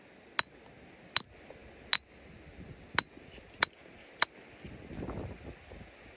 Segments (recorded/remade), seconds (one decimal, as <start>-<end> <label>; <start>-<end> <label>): 0.0-6.2 recorded